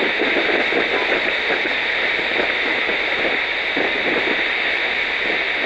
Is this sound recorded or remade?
recorded